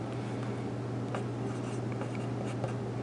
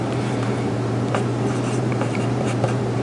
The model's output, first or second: second